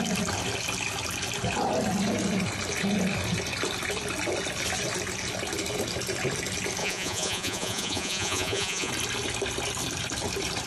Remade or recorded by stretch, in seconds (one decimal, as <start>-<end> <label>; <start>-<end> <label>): 0.0-6.8 recorded; 6.8-8.9 remade; 8.9-10.7 recorded